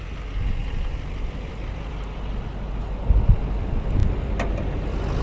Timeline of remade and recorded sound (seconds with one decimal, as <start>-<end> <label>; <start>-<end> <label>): 0.0-0.6 recorded; 0.6-1.9 remade; 1.9-4.0 recorded; 4.0-4.5 remade; 4.5-5.2 recorded